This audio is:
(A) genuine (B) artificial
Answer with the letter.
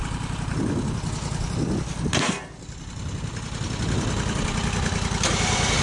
A